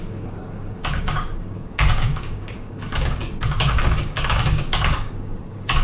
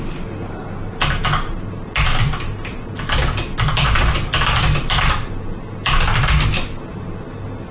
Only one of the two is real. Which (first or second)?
second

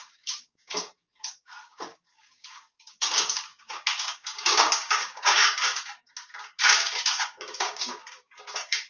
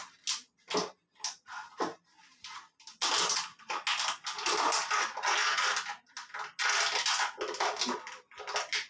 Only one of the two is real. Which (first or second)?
second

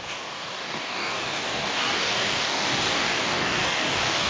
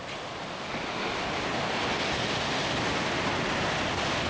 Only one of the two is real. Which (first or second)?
second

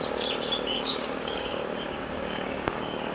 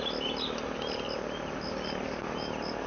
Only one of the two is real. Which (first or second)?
second